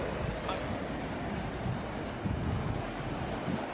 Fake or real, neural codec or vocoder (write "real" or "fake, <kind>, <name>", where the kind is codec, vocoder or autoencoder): real